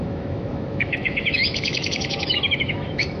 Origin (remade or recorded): remade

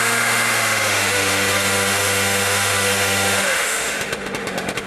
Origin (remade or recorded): remade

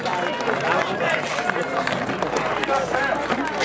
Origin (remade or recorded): recorded